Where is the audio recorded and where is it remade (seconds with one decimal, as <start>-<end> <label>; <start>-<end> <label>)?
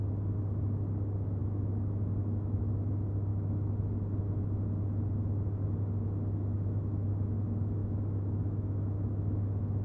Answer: 0.0-1.4 recorded; 1.4-2.6 remade; 2.6-7.8 recorded; 7.8-9.2 remade; 9.2-9.8 recorded